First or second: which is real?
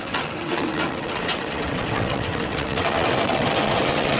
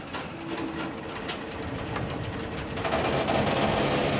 second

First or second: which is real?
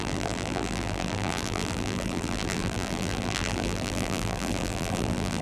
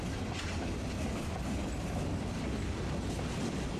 second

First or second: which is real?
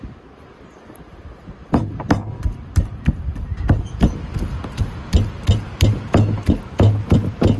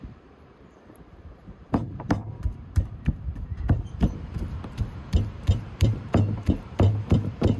first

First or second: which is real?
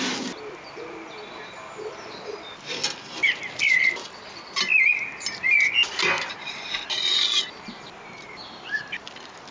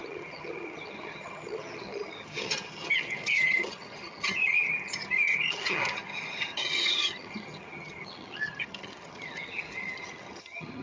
first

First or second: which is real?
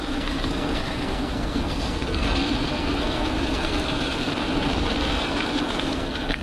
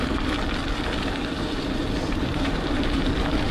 second